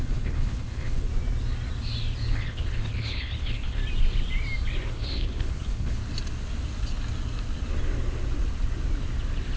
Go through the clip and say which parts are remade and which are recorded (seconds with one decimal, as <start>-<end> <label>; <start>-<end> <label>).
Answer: 0.0-1.1 remade; 1.1-2.3 recorded; 2.3-3.8 remade; 3.8-4.9 recorded; 4.9-6.0 remade; 6.0-9.6 recorded